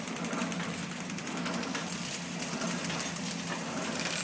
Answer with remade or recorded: recorded